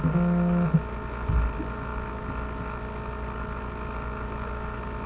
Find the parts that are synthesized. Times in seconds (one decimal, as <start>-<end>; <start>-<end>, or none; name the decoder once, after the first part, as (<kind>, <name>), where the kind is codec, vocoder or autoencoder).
none